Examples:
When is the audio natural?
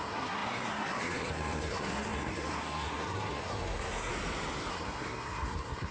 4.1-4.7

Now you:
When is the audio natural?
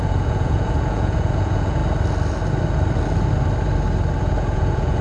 1.8-4.2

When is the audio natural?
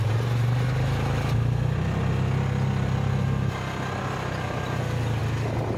0.0-5.8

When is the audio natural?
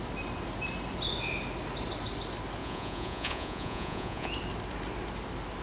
0.0-2.6; 4.3-5.6